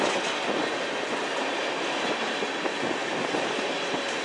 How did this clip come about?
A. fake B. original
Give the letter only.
B